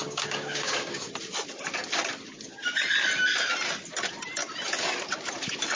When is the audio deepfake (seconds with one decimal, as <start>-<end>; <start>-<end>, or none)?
0.0-1.1